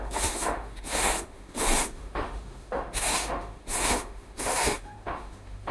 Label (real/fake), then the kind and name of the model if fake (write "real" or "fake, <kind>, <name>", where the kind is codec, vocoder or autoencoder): fake, autoencoder, DAC-VAE